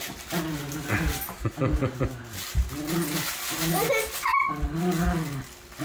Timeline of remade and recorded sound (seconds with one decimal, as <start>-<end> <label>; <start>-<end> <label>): 0.0-5.8 recorded